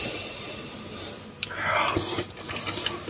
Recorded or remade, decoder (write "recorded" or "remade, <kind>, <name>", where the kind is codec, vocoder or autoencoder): recorded